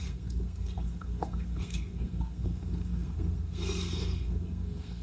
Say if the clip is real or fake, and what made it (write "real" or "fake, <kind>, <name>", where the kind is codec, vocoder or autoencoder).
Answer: fake, codec, SNAC